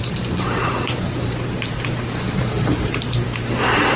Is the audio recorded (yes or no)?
no